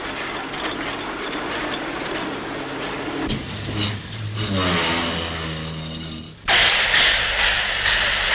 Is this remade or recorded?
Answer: recorded